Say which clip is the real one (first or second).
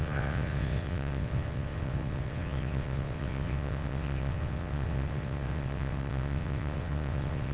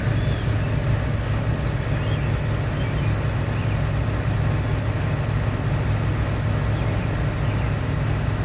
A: second